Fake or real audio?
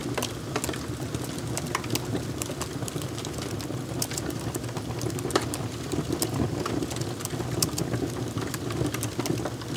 real